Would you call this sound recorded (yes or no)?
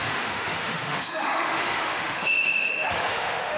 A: no